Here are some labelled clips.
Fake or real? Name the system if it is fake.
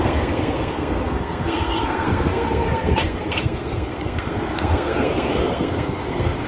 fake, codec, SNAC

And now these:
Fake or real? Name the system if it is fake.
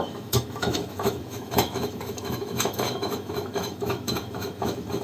fake, autoencoder, DAC-VAE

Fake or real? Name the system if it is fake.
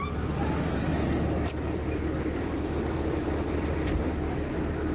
fake, vocoder, BigVGAN v2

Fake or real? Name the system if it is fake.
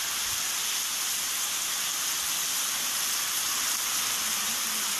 real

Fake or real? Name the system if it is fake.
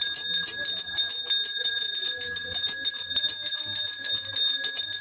real